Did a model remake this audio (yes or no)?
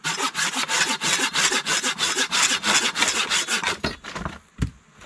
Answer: no